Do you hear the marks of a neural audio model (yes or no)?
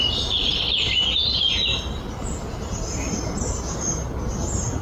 no